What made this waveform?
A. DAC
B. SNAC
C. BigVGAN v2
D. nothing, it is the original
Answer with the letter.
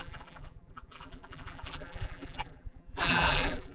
C